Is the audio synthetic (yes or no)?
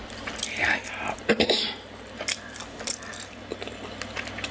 no